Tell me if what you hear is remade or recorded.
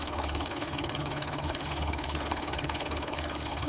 remade